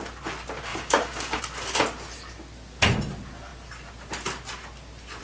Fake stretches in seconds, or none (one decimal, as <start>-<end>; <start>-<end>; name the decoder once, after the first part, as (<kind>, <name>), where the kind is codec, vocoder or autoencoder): 0.7-1.4 (codec, DAC)